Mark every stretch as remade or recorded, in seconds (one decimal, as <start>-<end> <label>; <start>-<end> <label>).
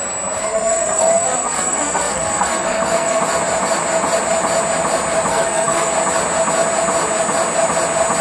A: 0.0-0.4 recorded; 0.4-3.2 remade; 3.2-5.3 recorded; 5.3-5.9 remade; 5.9-8.2 recorded